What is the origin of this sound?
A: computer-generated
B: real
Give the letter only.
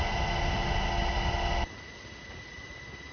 B